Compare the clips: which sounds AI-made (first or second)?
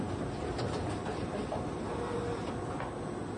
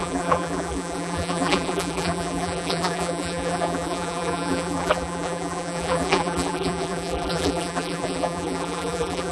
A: second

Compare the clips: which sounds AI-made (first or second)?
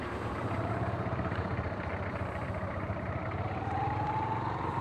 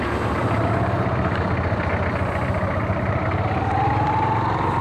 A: first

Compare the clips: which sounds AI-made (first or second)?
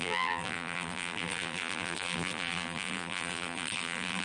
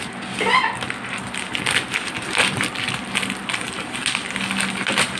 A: first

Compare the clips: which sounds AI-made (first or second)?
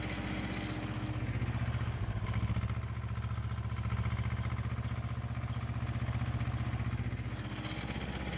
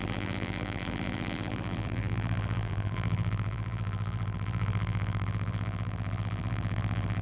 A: second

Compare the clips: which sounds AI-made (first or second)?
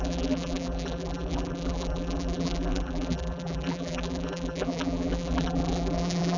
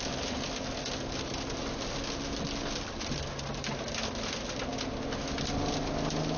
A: first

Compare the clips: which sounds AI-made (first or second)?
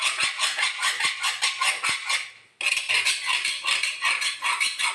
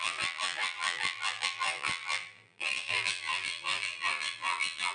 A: second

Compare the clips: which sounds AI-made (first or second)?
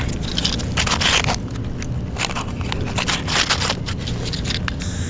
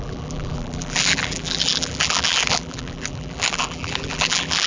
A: second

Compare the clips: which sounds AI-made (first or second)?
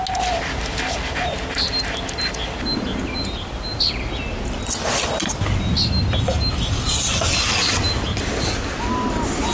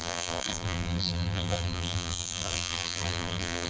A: second